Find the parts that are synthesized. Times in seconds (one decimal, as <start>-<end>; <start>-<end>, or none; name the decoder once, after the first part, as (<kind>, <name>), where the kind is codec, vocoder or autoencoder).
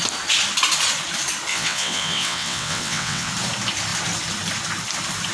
1.5-3.3 (vocoder, WaveNeXt)